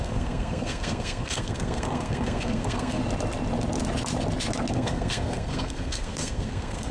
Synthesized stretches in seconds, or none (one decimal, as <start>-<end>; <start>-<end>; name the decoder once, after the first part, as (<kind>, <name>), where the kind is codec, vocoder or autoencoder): 0.0-3.0 (codec, SNAC); 4.7-6.9